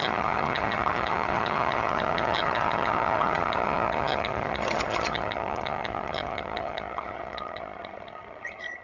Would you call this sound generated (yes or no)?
yes